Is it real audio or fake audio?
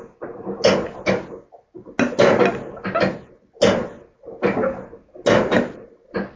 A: real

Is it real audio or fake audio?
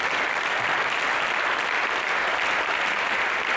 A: real